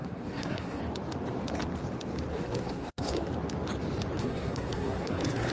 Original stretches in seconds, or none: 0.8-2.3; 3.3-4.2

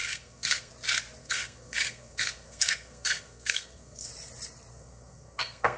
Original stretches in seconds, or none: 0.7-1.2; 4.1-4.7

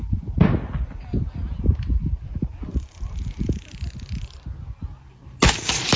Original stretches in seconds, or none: 0.0-6.0

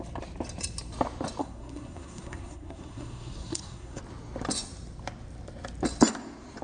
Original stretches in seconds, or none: 0.0-1.4; 4.0-6.6

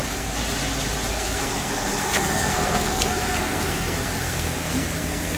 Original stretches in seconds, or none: 0.4-1.1